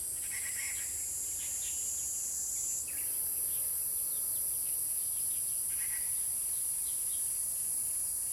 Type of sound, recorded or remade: recorded